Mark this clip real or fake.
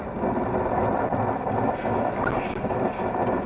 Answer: real